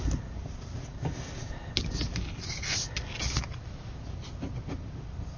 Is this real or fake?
real